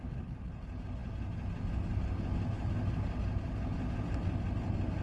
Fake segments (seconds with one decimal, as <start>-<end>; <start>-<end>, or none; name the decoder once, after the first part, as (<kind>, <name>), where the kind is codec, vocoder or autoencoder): none